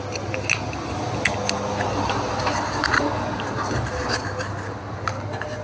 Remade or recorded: recorded